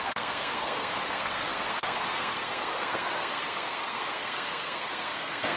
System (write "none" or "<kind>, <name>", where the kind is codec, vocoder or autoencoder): codec, SNAC